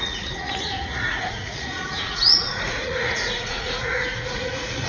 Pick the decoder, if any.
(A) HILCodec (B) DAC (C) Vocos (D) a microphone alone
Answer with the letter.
C